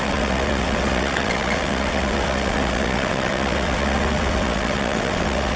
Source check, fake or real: fake